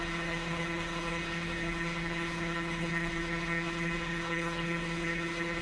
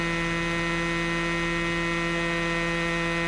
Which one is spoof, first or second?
first